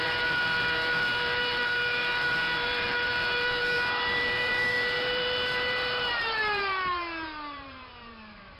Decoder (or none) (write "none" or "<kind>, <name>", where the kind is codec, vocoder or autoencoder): vocoder, BigVGAN v2